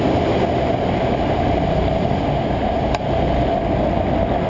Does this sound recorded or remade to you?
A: recorded